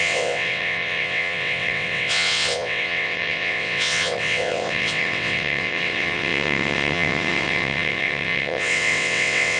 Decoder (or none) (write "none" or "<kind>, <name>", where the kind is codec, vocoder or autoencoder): vocoder, WaveNeXt